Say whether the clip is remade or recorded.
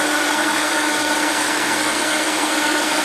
remade